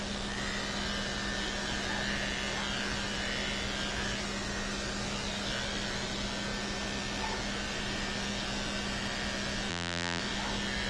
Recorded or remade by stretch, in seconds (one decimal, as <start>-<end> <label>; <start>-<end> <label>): 0.0-9.7 recorded; 9.7-10.2 remade; 10.2-10.9 recorded